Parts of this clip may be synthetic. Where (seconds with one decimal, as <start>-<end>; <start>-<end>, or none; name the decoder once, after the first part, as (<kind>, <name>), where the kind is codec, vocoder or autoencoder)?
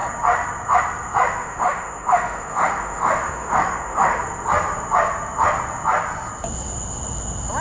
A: 1.4-4.2 (autoencoder, DAC-VAE)